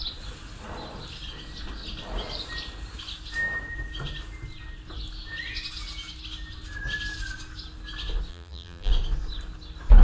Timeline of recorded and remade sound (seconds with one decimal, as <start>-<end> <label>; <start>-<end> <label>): 0.0-8.3 recorded; 8.3-8.9 remade; 8.9-10.0 recorded